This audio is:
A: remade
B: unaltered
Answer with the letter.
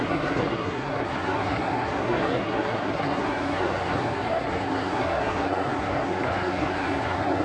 A